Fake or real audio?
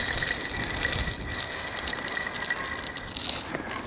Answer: real